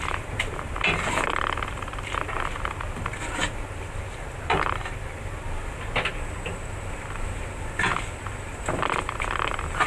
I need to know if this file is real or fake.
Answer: real